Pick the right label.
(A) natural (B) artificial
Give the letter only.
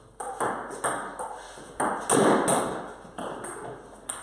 A